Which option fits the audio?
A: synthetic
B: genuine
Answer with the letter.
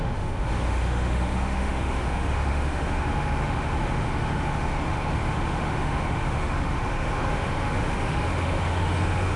A